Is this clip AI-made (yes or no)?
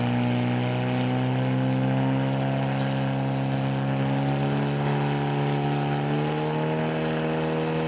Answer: no